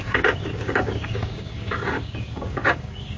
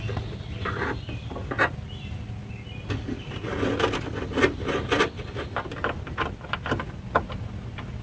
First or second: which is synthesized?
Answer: first